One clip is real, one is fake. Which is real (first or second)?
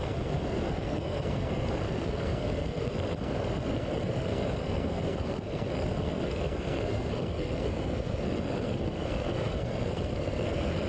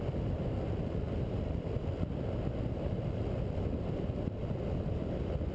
second